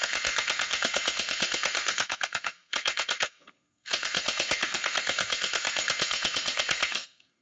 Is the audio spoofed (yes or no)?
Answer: yes